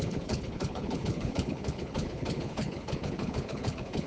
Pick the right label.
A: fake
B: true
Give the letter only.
A